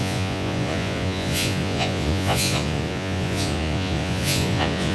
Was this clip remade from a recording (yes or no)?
yes